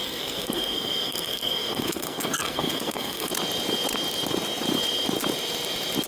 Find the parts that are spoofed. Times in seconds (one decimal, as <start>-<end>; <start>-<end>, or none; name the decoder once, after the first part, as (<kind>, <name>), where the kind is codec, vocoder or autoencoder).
0.0-3.3 (codec, SNAC)